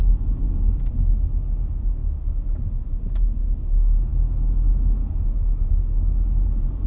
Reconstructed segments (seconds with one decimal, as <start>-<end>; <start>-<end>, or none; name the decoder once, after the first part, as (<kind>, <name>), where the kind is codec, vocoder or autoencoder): none